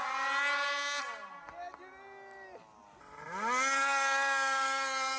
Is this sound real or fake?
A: real